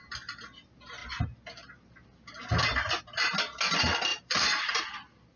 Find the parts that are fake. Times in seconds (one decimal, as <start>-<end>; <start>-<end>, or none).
4.1-4.7